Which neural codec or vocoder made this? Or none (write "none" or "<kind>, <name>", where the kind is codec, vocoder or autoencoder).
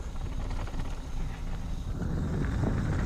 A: none